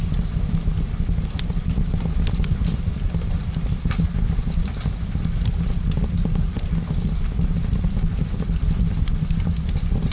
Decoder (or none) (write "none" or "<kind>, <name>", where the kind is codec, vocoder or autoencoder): vocoder, BigVGAN v2